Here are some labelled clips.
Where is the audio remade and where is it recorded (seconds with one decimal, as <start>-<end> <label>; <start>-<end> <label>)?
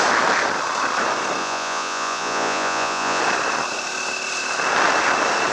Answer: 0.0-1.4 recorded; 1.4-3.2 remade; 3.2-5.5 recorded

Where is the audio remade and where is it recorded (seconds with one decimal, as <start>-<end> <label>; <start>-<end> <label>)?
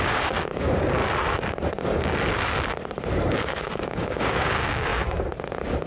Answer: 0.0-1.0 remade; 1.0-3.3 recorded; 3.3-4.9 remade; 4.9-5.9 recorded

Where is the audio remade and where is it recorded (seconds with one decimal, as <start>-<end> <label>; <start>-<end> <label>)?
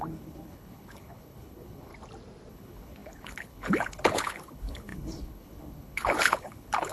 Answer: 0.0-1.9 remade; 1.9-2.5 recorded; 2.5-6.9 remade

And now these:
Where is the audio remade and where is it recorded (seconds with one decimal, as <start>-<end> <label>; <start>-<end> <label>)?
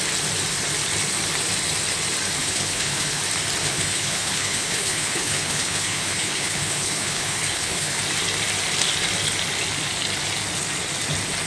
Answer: 0.0-2.4 recorded; 2.4-3.2 remade; 3.2-3.6 recorded; 3.6-8.0 remade; 8.0-11.5 recorded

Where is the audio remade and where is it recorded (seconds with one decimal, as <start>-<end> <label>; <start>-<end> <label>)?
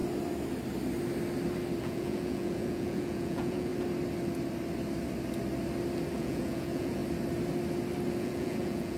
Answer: 0.0-1.8 recorded; 1.8-3.7 remade; 3.7-6.1 recorded; 6.1-7.0 remade; 7.0-8.2 recorded; 8.2-9.0 remade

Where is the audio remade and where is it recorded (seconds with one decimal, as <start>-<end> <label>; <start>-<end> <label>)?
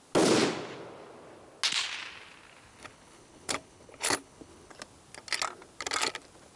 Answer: 0.0-2.7 recorded; 2.7-4.7 remade; 4.7-6.6 recorded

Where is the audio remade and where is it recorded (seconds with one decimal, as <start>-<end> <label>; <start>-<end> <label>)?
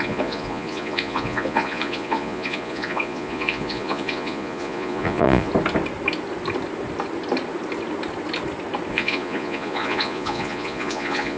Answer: 0.0-5.5 remade; 5.5-8.9 recorded; 8.9-11.4 remade